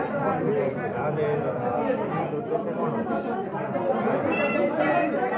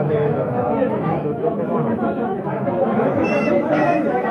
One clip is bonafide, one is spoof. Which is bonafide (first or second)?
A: first